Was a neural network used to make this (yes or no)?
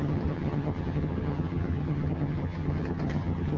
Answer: yes